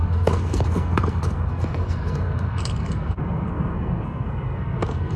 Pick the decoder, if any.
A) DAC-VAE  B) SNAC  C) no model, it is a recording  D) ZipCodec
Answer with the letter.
B